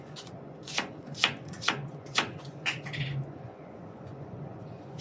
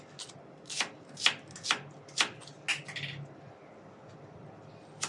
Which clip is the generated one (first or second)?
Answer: first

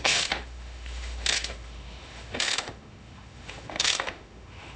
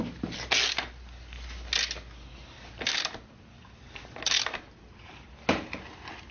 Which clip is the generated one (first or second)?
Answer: first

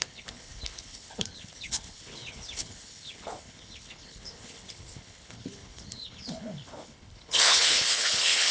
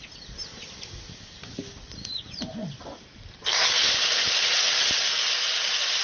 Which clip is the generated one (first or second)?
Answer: first